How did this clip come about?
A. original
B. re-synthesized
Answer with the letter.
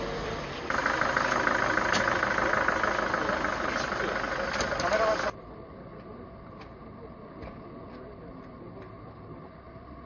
A